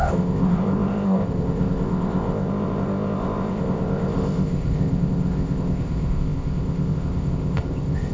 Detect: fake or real fake